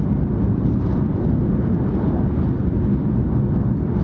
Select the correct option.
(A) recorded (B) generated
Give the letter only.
A